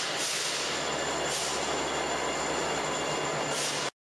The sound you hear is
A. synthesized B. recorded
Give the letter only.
B